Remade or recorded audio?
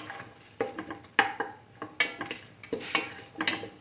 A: recorded